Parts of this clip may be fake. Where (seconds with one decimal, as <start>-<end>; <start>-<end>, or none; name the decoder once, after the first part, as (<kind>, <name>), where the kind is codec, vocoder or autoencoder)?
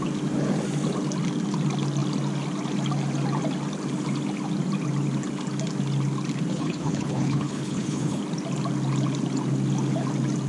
6.5-8.2 (codec, HILCodec)